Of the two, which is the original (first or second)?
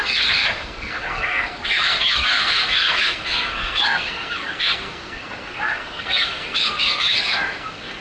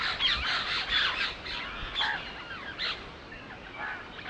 second